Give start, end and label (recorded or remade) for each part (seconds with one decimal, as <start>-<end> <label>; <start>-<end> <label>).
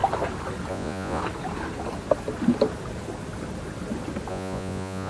0.0-0.7 recorded; 0.7-1.2 remade; 1.2-4.3 recorded; 4.3-5.1 remade